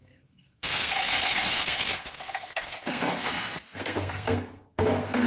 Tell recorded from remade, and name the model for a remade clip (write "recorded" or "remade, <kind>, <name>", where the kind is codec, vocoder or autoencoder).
remade, codec, SNAC